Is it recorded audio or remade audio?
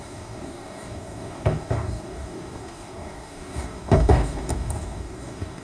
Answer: remade